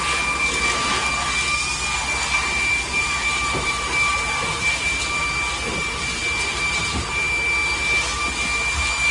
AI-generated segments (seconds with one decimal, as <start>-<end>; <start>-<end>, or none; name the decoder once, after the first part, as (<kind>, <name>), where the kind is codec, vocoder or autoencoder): 3.0-5.2 (vocoder, BigVGAN v2); 6.2-7.3